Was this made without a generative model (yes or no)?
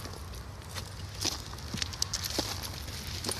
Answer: yes